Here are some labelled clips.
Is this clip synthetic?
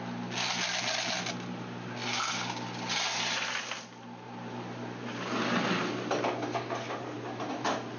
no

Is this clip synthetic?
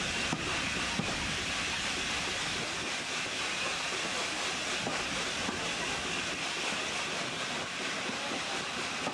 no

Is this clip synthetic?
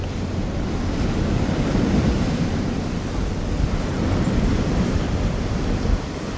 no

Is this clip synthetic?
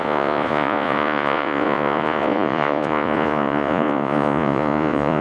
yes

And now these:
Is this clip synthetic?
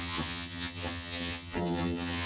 yes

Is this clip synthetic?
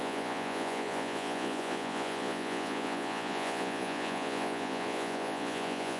yes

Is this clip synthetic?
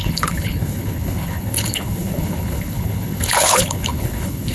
yes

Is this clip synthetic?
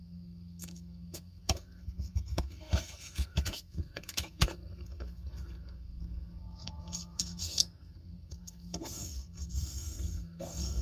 yes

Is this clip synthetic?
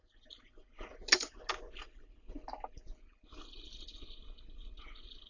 no